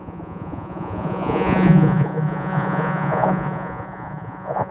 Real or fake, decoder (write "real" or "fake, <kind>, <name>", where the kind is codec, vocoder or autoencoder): fake, vocoder, Vocos